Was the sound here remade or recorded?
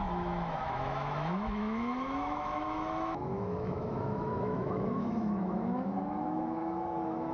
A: remade